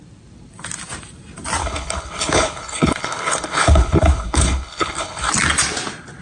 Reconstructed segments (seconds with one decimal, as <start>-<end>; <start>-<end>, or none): 1.6-5.3